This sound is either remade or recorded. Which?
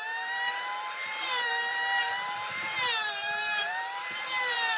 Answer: remade